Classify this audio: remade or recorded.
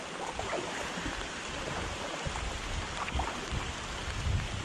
recorded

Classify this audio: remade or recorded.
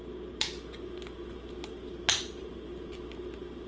recorded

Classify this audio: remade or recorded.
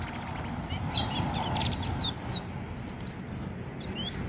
recorded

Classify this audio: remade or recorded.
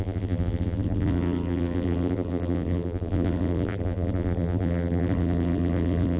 remade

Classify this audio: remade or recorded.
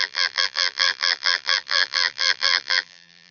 remade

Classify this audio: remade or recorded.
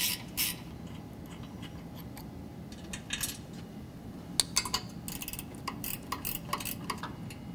recorded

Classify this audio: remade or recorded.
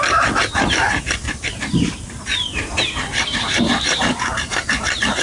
remade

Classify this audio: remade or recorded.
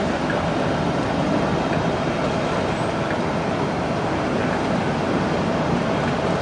recorded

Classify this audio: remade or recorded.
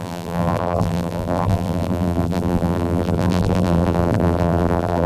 remade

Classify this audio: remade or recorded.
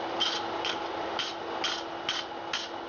recorded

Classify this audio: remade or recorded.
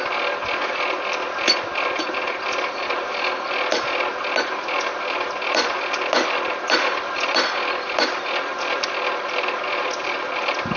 remade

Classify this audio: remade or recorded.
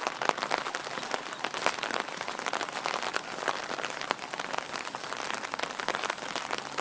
recorded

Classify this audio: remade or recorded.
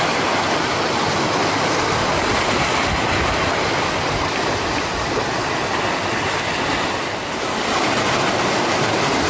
recorded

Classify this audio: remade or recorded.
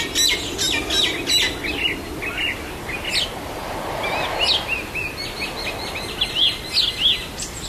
recorded